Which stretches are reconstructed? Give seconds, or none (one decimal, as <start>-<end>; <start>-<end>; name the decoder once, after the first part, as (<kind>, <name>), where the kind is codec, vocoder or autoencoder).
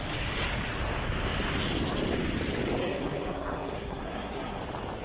2.8-4.6 (codec, SNAC)